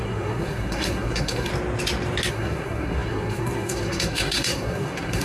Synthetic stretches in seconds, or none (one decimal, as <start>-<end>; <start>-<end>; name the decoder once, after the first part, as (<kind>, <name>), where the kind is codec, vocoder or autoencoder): 0.0-1.5 (codec, SNAC); 2.3-5.2